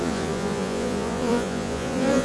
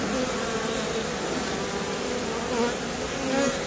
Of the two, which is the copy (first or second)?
first